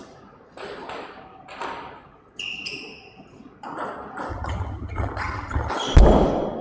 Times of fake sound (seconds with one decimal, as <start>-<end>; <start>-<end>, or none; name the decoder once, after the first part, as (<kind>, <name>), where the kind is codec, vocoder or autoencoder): 4.3-5.7 (vocoder, HiFi-GAN)